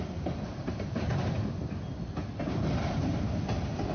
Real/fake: real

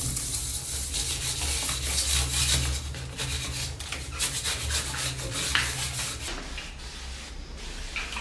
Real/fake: real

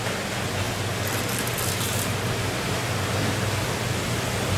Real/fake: real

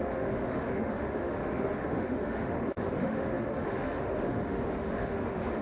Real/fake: fake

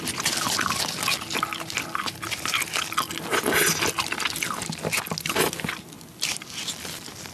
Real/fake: real